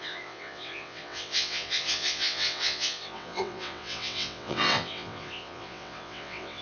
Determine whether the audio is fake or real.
fake